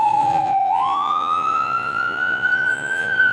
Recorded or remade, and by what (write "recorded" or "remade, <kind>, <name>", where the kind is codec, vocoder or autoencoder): remade, vocoder, Vocos